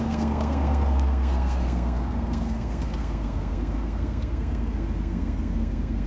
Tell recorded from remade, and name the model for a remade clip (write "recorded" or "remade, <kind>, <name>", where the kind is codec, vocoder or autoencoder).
remade, codec, SNAC